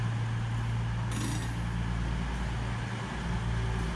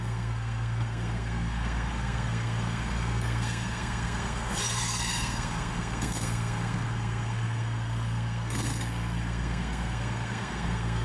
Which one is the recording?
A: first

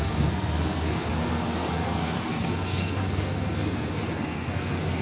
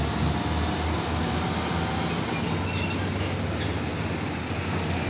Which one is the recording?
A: second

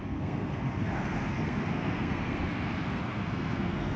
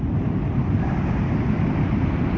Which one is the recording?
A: second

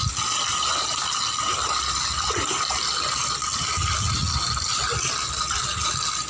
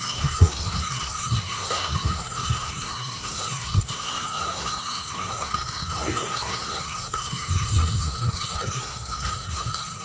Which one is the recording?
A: first